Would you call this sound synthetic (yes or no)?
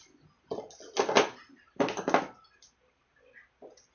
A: no